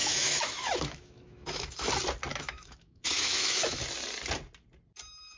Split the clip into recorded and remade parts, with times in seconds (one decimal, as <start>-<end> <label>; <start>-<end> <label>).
0.0-1.9 remade; 1.9-2.3 recorded; 2.3-3.8 remade; 3.8-5.4 recorded